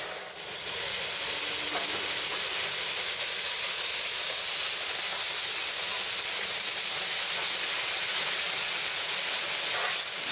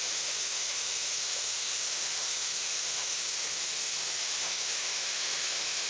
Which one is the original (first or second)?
first